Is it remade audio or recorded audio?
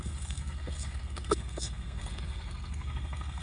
remade